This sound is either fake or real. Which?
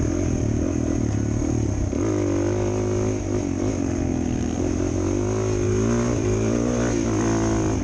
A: real